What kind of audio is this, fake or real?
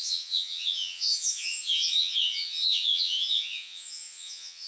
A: fake